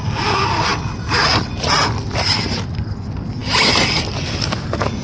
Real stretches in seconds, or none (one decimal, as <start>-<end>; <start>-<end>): 0.0-5.0

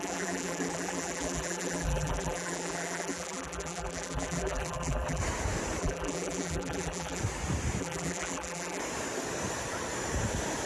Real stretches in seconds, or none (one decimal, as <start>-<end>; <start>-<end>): 5.2-5.8; 7.2-7.8; 8.8-10.7